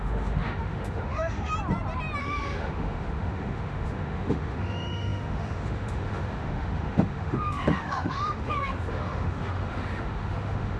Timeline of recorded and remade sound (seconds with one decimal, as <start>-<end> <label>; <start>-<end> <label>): 0.0-1.5 remade; 1.5-2.2 recorded; 2.2-10.8 remade